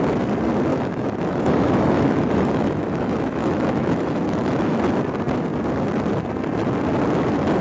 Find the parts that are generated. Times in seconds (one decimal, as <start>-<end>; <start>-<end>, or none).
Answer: 0.7-4.8